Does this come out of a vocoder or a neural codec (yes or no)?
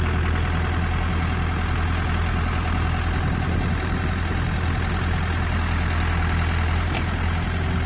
no